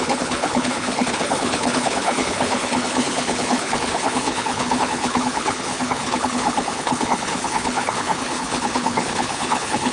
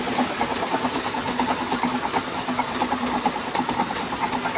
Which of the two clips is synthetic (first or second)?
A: first